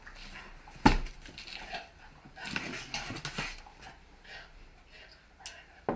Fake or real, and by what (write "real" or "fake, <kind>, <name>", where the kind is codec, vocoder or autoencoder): real